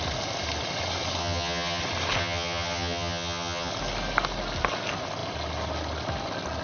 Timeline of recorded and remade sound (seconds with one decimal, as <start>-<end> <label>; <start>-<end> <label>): 0.0-1.2 recorded; 1.2-1.8 remade; 1.8-2.2 recorded; 2.2-3.7 remade; 3.7-6.6 recorded